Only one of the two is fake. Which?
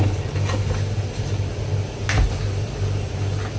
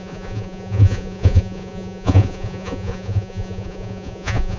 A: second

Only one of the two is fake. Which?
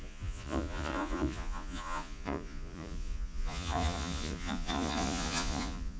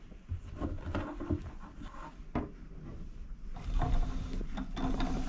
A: first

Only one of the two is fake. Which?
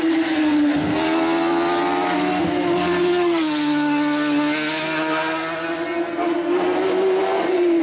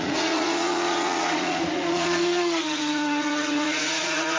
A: second